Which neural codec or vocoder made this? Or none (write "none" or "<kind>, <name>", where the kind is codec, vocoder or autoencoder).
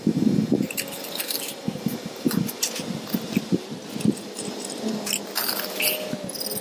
none